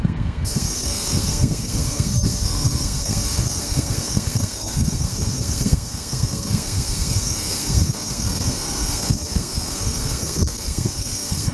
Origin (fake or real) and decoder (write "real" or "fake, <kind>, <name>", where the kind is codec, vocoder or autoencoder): fake, codec, SNAC